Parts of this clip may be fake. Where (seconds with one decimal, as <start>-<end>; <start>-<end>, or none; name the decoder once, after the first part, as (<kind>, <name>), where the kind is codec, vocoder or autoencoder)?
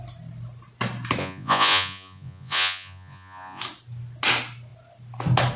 1.2-3.6 (vocoder, Vocos)